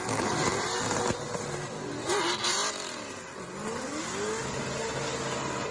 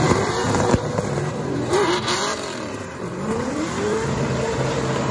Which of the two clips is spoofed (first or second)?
second